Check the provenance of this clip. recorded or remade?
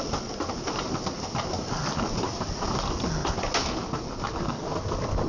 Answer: recorded